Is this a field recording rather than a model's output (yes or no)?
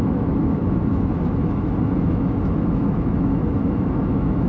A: no